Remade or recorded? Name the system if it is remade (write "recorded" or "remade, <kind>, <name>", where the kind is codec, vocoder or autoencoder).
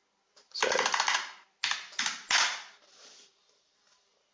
recorded